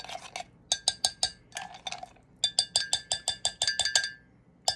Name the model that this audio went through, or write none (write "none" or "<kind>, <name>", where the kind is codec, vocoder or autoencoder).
none